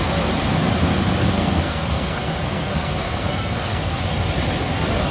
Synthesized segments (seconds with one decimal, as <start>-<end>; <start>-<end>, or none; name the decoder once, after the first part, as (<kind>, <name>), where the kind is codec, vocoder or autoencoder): 1.2-4.0 (codec, SNAC)